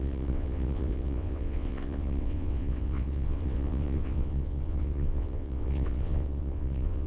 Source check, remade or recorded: remade